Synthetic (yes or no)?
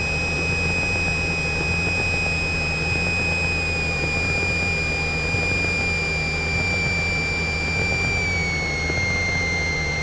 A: no